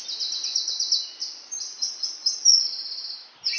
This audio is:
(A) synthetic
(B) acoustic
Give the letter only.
B